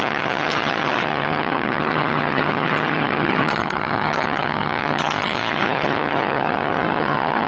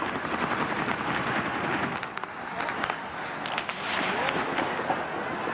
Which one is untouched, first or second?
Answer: second